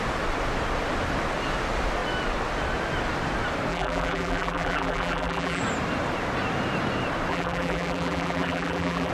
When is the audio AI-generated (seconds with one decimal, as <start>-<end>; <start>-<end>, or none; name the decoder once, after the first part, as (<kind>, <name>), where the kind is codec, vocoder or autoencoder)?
3.7-5.6 (vocoder, BigVGAN v2); 7.3-9.1